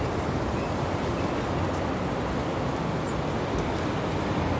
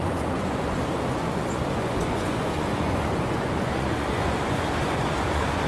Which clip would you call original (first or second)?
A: first